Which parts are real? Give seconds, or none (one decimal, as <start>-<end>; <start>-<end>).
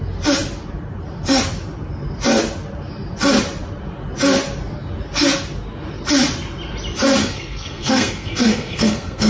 0.0-7.2